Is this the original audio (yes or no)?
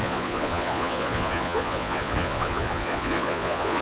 no